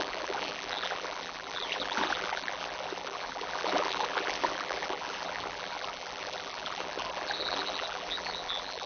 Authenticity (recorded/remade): remade